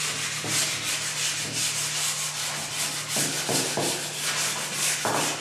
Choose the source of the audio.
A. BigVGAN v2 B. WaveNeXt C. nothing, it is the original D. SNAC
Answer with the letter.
C